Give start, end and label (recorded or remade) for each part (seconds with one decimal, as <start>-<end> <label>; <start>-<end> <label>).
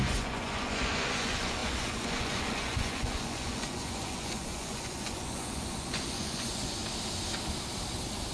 0.0-6.8 remade; 6.8-8.3 recorded